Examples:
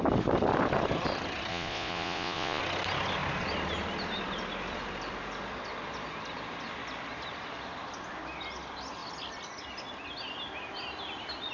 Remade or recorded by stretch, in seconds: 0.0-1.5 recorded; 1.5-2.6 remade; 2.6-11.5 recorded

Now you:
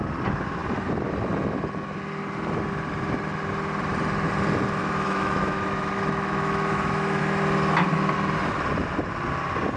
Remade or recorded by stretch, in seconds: 0.0-4.8 recorded; 4.8-7.2 remade; 7.2-9.8 recorded